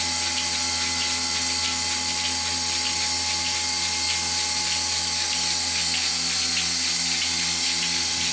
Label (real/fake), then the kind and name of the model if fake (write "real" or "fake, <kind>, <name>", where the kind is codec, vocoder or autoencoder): real